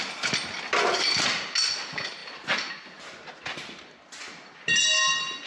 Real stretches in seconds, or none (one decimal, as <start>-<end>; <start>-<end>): 0.0-5.5